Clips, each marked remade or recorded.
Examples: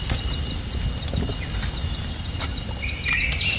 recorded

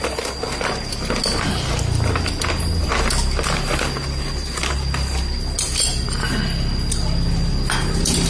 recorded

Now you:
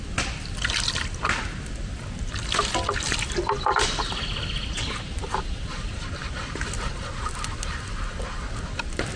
recorded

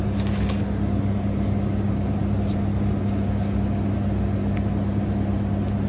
recorded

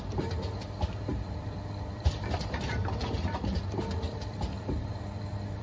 remade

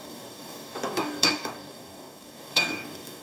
remade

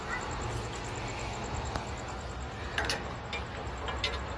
recorded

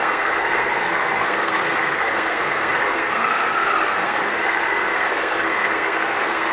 remade